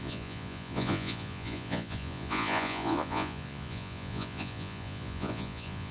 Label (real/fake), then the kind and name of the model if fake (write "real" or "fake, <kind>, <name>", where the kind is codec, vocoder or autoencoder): fake, vocoder, Vocos